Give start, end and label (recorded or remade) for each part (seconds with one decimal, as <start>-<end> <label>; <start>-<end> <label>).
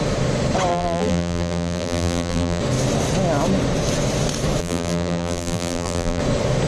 0.0-0.7 recorded; 0.7-2.6 remade; 2.6-4.6 recorded; 4.6-6.2 remade; 6.2-6.7 recorded